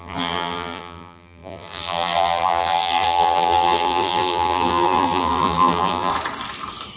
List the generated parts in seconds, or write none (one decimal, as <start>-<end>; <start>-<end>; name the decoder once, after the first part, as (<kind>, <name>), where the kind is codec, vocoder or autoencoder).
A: 0.0-6.1 (vocoder, BigVGAN v2)